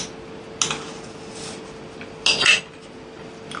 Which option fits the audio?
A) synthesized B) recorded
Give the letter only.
B